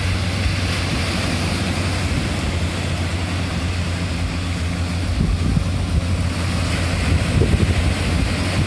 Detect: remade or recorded recorded